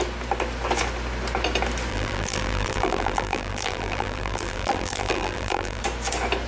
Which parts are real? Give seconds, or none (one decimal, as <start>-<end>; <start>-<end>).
0.0-1.9; 5.8-6.5